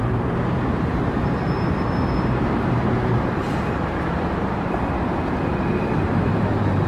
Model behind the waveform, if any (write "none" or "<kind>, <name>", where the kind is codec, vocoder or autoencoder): vocoder, BigVGAN v2